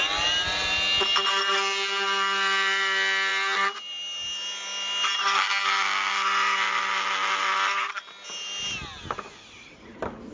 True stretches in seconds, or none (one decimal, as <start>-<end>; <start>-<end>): 0.0-10.3